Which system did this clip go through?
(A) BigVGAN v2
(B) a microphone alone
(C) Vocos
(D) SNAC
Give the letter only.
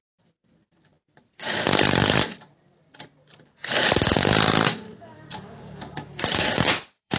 A